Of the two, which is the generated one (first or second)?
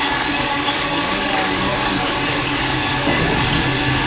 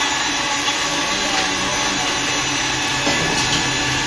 first